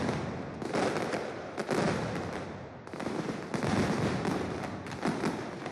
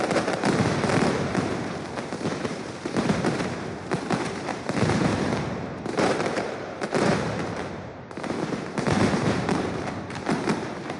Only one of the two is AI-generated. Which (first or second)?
second